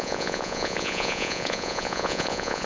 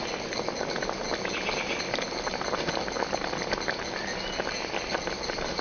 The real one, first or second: second